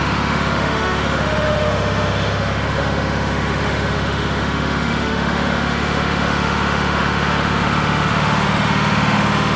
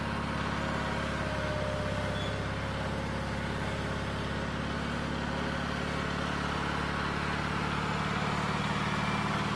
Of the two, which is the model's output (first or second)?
first